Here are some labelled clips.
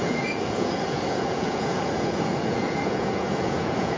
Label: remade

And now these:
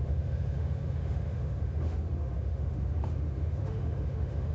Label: remade